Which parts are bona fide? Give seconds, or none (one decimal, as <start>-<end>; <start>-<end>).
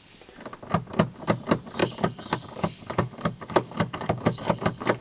0.0-1.8